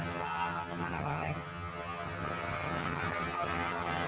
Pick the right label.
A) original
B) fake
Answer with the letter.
B